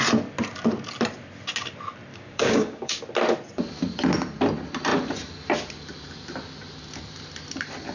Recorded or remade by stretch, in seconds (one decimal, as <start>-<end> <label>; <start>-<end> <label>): 0.0-2.1 recorded; 2.1-3.0 remade; 3.0-7.9 recorded